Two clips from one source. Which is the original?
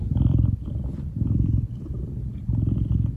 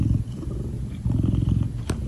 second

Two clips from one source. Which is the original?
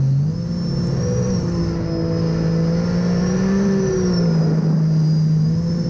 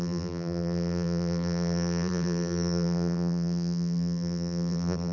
first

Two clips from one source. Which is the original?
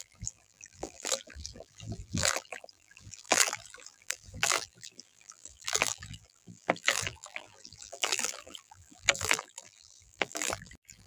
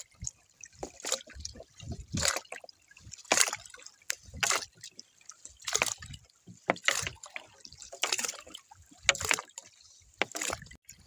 second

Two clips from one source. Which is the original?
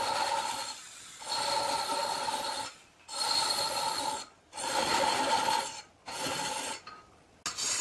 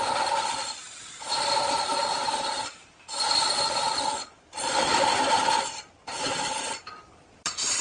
first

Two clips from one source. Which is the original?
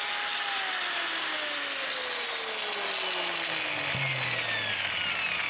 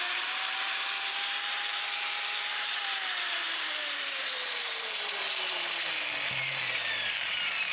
first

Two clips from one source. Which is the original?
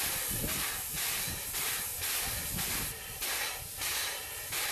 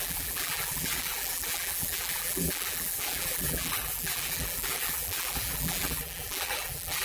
first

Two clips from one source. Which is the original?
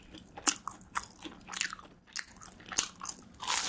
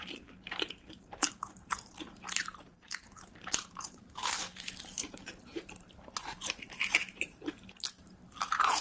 first